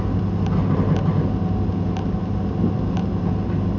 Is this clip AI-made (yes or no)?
no